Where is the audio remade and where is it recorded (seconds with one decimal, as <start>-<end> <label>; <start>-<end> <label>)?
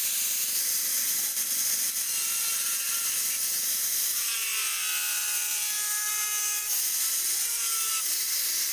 0.0-8.7 recorded